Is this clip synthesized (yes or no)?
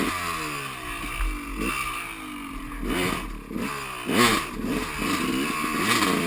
no